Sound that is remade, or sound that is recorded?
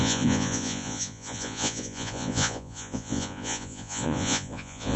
remade